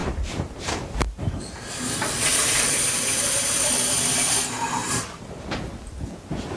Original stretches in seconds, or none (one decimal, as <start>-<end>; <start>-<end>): 0.7-2.3; 3.9-4.8; 5.4-6.6